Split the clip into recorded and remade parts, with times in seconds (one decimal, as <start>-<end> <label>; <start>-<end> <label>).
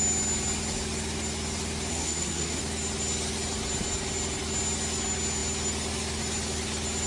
0.0-1.9 recorded; 1.9-2.6 remade; 2.6-7.1 recorded